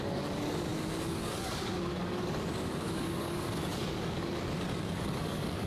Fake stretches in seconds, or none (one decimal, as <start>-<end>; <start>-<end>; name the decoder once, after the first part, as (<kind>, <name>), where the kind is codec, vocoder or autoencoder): 0.0-5.7 (codec, DAC)